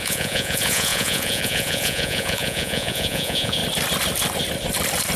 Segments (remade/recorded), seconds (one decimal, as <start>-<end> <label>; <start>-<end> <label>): 0.0-3.6 remade; 3.6-5.2 recorded